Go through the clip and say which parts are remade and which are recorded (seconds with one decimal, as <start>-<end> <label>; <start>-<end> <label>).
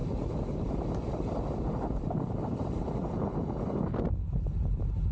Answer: 0.0-5.1 recorded